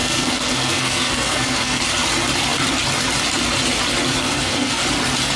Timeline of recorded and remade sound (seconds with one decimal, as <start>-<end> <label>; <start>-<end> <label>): 0.0-1.8 remade; 1.8-4.2 recorded; 4.2-4.8 remade; 4.8-5.4 recorded